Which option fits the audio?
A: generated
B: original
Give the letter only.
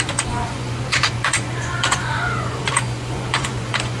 A